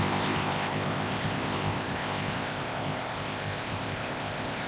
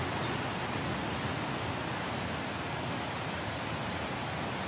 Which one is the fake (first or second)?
first